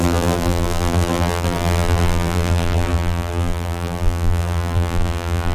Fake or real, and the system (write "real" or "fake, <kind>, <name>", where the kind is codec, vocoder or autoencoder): fake, vocoder, BigVGAN v2